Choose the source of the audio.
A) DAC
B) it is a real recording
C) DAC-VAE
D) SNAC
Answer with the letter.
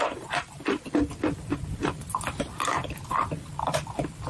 B